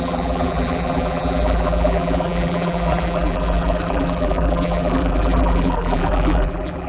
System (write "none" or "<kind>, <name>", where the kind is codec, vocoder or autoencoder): vocoder, BigVGAN v2